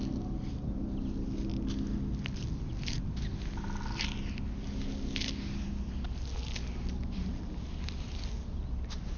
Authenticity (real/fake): real